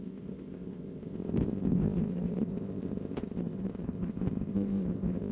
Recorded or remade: remade